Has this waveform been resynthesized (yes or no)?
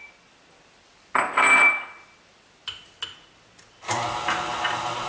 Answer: no